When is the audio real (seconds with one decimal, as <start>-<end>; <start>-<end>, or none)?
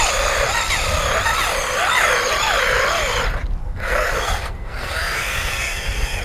0.0-3.6